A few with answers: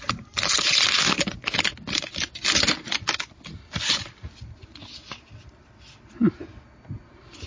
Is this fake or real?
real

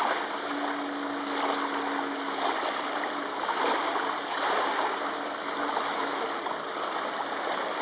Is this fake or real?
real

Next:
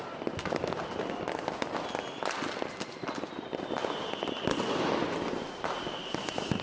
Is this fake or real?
real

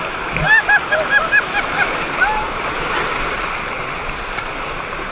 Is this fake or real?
real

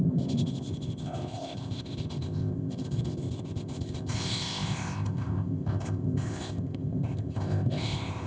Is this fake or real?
fake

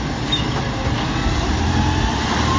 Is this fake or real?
real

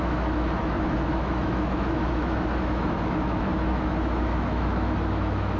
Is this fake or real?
fake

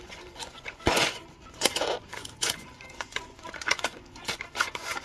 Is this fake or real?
fake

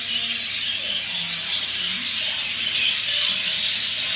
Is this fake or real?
real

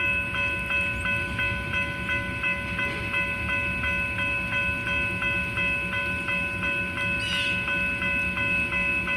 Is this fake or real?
real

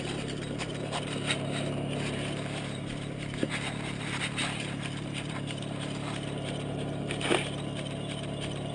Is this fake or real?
fake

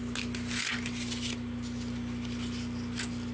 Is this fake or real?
real